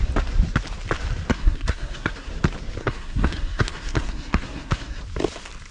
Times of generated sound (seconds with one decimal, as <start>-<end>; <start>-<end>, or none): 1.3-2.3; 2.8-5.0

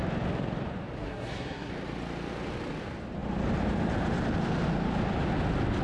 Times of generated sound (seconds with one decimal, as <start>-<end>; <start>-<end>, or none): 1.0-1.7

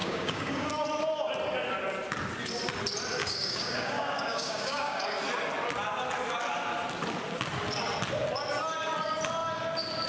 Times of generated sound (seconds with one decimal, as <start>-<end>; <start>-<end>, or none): 0.0-0.7; 3.2-5.0